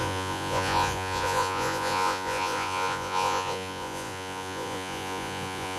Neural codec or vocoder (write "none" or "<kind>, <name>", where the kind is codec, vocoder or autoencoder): vocoder, Vocos